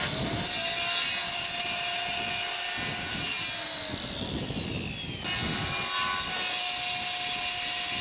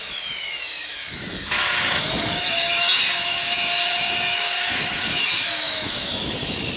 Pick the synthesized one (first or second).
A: second